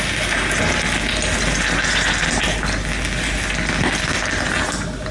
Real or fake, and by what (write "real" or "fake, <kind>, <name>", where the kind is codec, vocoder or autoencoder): real